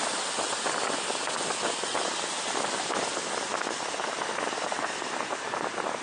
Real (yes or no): yes